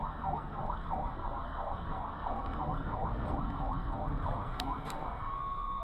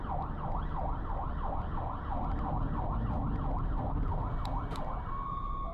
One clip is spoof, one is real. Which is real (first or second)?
second